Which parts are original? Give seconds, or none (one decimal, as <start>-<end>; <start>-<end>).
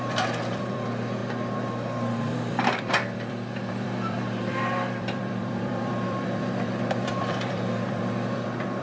1.2-2.3